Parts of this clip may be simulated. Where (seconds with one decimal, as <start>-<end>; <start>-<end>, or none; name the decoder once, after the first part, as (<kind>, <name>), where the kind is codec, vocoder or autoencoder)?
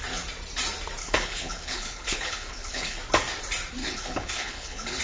1.0-3.0 (codec, HILCodec); 3.8-5.0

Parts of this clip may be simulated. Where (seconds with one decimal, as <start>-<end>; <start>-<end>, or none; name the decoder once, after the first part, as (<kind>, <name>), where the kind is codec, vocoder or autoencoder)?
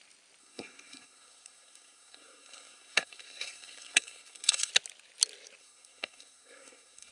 0.4-4.7 (codec, SNAC); 5.6-7.1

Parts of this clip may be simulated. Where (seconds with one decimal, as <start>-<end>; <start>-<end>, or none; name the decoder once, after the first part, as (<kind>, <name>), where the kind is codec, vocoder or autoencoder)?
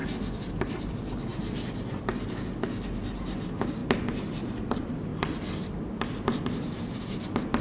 none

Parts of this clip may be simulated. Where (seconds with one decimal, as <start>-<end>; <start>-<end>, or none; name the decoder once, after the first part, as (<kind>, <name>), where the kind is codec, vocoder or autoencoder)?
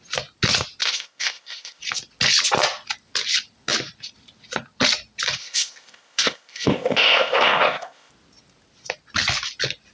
0.8-1.8 (codec, ZipCodec); 5.4-8.1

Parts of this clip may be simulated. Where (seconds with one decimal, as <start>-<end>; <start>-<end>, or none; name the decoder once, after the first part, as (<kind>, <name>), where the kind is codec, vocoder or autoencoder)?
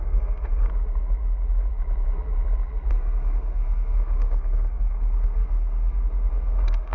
0.0-0.7 (codec, SNAC); 2.9-6.9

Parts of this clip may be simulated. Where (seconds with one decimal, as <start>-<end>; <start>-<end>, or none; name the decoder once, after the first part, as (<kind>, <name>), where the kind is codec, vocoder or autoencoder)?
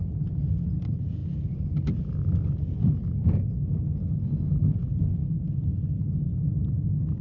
5.2-6.0 (vocoder, BigVGAN v2)